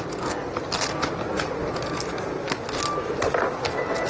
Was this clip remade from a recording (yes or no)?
no